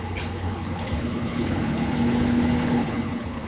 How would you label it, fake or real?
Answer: fake